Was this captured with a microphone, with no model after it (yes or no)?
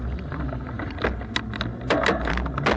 yes